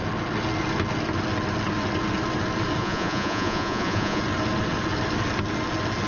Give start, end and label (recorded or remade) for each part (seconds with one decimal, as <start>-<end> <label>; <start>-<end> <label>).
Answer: 0.0-2.8 recorded; 2.8-4.2 remade; 4.2-6.1 recorded